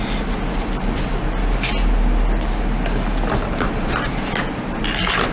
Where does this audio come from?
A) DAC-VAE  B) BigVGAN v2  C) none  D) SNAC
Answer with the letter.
C